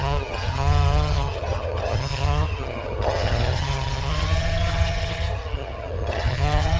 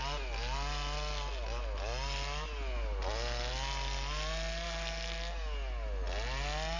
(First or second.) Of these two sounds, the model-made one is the first